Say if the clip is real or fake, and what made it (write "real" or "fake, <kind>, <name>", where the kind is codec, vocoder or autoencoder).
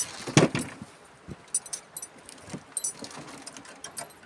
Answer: real